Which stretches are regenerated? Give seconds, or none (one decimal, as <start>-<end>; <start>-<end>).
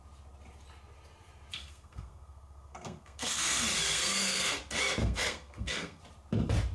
1.5-4.6; 5.0-6.0